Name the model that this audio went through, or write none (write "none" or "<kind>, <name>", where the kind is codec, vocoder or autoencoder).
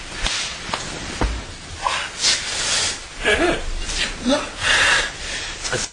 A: none